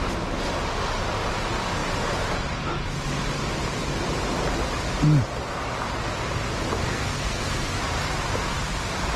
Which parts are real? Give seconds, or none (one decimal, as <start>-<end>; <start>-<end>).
0.0-6.8; 7.8-9.2